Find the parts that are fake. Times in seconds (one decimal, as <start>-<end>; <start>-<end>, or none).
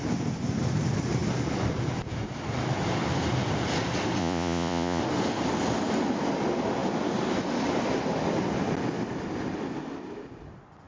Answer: 4.2-5.0